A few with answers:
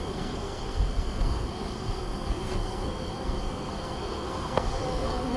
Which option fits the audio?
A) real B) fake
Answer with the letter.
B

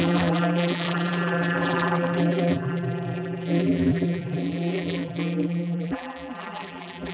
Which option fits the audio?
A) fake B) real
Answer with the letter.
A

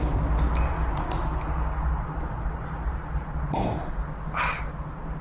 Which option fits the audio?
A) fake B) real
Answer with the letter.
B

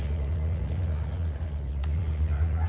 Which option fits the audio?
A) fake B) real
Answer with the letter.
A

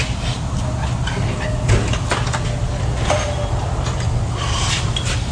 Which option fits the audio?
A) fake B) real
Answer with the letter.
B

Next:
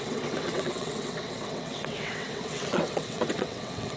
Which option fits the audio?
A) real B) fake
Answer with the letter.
B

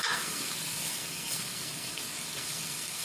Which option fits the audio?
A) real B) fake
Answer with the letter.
B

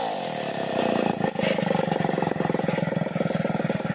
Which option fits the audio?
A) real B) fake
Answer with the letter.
A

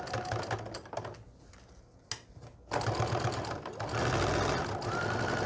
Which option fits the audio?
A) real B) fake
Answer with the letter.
A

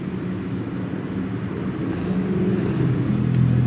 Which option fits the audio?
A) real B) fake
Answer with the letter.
A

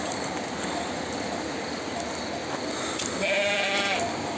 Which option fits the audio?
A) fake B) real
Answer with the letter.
B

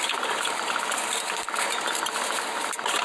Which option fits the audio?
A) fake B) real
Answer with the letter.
A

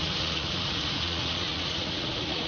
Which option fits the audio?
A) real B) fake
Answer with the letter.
B